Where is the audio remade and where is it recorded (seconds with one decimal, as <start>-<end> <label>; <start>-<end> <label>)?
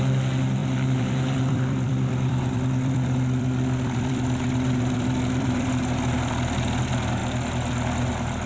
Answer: 0.0-0.6 recorded; 0.6-5.7 remade; 5.7-8.5 recorded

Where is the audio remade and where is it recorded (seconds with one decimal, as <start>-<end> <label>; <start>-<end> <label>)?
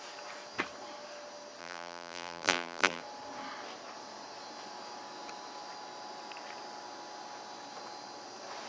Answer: 0.0-1.6 recorded; 1.6-3.0 remade; 3.0-8.7 recorded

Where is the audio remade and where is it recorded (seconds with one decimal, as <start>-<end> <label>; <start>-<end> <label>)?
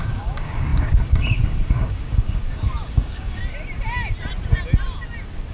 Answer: 0.0-3.4 remade; 3.4-5.5 recorded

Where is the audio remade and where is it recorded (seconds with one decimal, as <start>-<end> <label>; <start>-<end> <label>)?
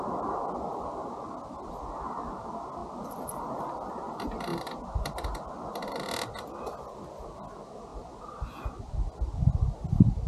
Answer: 0.0-4.5 recorded; 4.5-5.5 remade; 5.5-10.3 recorded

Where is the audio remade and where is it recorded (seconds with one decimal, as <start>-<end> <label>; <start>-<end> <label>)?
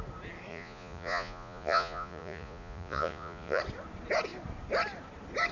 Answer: 0.0-0.5 recorded; 0.5-3.6 remade; 3.6-5.5 recorded